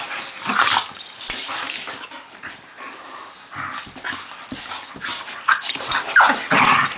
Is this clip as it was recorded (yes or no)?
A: yes